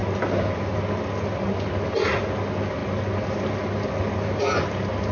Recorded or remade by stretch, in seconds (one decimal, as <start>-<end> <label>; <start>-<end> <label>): 0.0-5.1 recorded